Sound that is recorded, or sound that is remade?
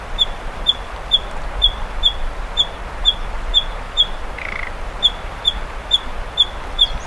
recorded